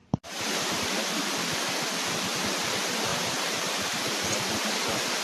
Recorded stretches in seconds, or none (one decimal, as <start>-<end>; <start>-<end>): 0.9-3.1; 4.7-5.2